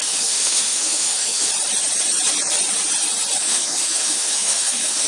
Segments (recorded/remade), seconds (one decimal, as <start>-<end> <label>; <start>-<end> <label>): 0.0-1.5 remade; 1.5-3.4 recorded; 3.4-5.1 remade